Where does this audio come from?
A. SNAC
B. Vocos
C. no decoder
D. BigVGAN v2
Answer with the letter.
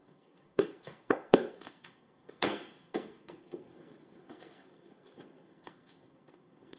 A